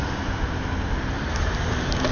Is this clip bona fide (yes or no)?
yes